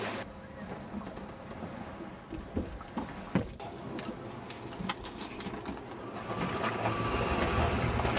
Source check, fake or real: real